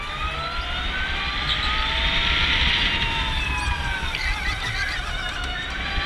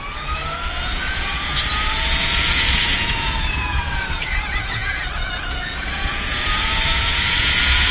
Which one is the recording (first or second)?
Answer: first